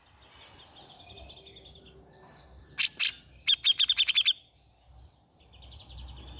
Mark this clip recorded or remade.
recorded